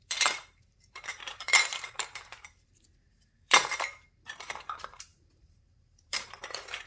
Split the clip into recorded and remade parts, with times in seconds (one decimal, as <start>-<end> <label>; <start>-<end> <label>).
0.0-6.9 remade